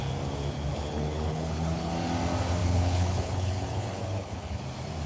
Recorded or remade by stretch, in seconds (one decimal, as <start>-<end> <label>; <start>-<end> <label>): 0.0-0.7 recorded; 0.7-1.9 remade; 1.9-2.6 recorded; 2.6-4.6 remade; 4.6-5.1 recorded